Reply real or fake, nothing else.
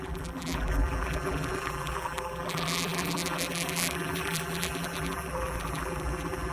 fake